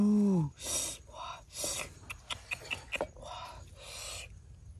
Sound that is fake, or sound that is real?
real